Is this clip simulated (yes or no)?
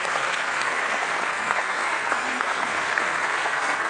yes